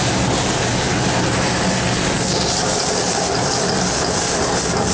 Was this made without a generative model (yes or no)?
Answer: yes